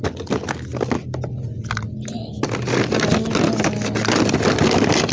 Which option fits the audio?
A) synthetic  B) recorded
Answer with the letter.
B